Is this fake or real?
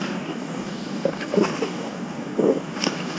fake